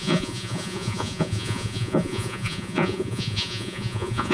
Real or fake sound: fake